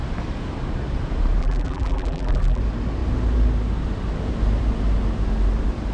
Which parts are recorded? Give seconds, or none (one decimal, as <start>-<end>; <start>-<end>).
0.0-1.4; 2.6-5.9